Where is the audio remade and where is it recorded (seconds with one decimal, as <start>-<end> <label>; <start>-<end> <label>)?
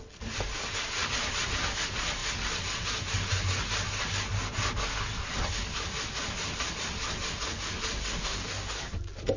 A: 0.0-8.2 recorded; 8.2-8.7 remade; 8.7-9.4 recorded